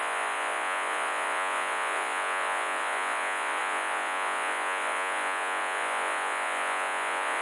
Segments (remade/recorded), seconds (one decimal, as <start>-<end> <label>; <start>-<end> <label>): 0.0-7.4 remade